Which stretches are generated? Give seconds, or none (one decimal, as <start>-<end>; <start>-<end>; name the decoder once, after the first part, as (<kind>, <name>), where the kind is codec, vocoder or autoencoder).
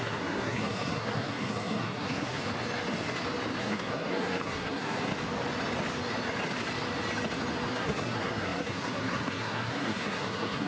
0.0-2.4 (codec, SNAC); 3.6-5.1; 7.7-10.7